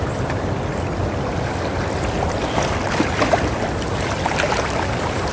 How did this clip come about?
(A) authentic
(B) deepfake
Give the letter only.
A